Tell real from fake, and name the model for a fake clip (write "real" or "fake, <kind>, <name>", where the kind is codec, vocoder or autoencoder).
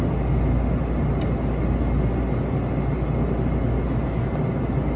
real